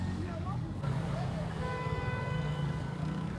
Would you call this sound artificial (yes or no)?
yes